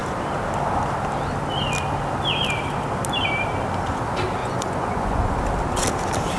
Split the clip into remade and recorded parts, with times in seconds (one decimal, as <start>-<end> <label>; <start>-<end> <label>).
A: 0.0-4.4 recorded; 4.4-5.4 remade; 5.4-6.4 recorded